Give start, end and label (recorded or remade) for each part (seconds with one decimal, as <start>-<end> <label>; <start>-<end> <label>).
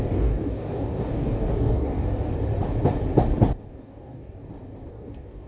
0.0-2.3 remade; 2.3-3.7 recorded; 3.7-4.4 remade; 4.4-4.9 recorded; 4.9-5.5 remade